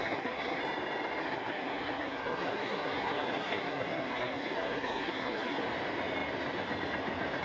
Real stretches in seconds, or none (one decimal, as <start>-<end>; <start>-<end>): 0.6-1.2; 5.6-7.4